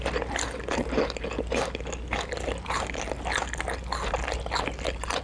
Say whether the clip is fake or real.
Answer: real